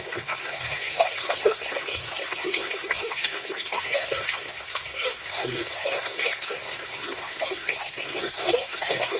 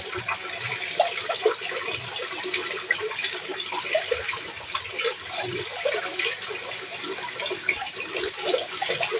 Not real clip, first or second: first